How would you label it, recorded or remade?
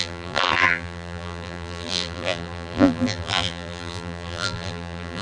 remade